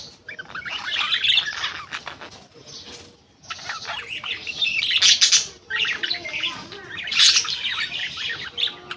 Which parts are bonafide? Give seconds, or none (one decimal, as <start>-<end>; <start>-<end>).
0.0-9.0